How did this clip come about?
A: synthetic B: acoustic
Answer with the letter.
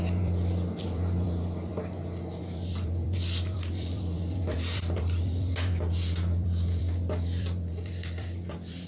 A